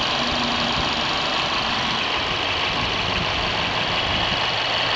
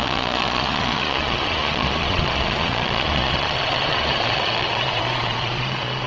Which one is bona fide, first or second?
first